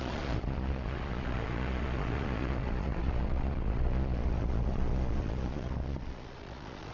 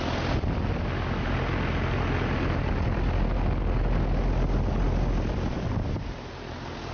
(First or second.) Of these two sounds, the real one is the second